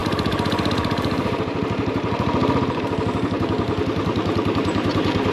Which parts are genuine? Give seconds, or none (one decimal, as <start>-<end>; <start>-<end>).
0.0-0.7